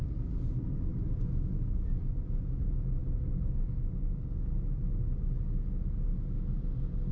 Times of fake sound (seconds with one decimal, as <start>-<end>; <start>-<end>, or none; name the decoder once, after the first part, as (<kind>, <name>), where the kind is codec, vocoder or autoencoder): none